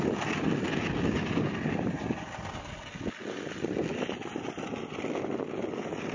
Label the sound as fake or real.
real